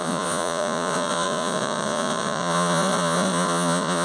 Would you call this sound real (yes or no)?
no